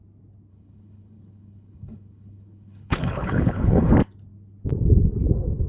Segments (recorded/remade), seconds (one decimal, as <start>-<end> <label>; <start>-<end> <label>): 0.0-0.5 recorded; 0.5-3.9 remade; 3.9-5.7 recorded